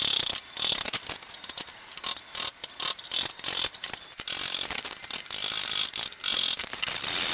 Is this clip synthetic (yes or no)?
no